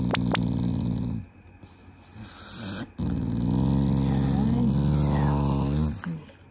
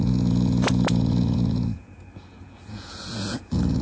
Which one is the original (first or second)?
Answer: first